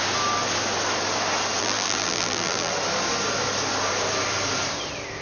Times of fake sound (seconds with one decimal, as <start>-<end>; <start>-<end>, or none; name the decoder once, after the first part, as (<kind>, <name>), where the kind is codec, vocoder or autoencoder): 1.6-2.7 (vocoder, BigVGAN v2)